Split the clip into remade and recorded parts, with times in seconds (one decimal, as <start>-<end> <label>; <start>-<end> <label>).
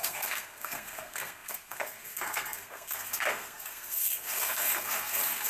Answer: 0.0-5.5 remade